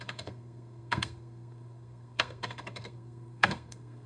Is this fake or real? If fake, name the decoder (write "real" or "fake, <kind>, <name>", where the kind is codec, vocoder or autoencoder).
fake, codec, SNAC